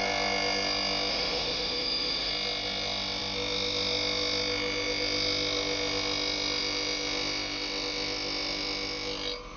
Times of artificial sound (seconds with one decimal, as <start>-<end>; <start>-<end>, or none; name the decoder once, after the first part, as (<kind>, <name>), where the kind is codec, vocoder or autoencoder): 1.1-2.3 (autoencoder, DAC-VAE)